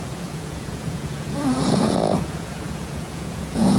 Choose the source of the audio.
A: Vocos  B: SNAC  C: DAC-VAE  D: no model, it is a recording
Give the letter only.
A